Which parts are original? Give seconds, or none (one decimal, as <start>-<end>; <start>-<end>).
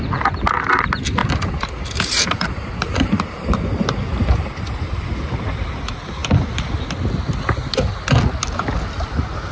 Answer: 0.0-1.2; 3.5-4.1; 5.1-9.5